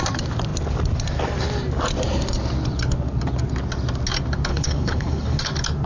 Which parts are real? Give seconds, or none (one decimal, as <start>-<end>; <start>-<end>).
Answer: 0.0-4.5; 5.4-5.9